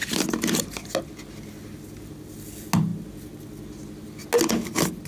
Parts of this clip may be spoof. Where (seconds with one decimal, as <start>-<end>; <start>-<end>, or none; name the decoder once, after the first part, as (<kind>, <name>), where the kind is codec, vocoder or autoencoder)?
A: none